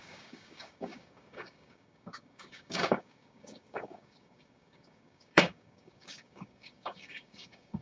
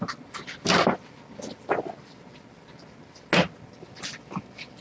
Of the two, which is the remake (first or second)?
first